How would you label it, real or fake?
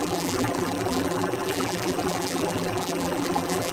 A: fake